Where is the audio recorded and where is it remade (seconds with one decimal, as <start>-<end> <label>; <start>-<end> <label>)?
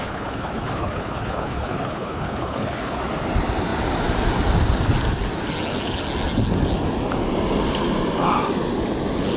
0.0-3.0 remade; 3.0-9.4 recorded